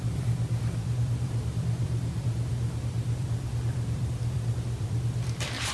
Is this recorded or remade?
remade